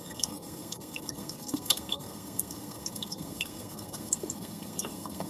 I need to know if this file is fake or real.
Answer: fake